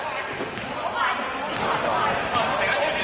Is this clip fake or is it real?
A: real